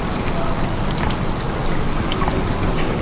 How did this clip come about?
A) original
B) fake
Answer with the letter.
A